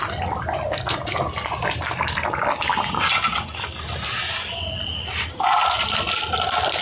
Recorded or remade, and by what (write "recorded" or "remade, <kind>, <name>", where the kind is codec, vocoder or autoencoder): recorded